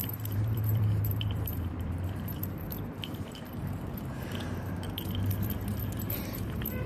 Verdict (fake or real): fake